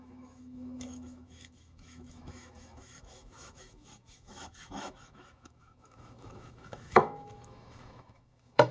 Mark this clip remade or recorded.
remade